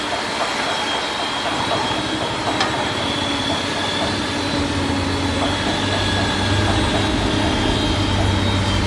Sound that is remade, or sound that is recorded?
recorded